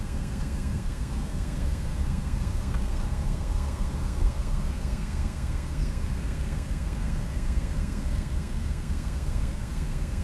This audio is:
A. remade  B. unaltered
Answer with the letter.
A